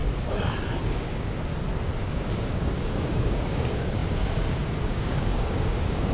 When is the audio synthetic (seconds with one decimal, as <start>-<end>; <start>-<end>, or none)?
0.9-1.5; 2.0-6.1